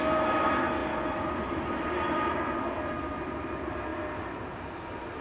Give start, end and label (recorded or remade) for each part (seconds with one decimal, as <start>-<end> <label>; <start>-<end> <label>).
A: 0.0-5.2 recorded